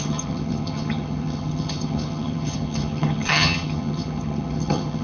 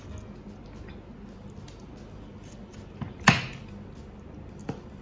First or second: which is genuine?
second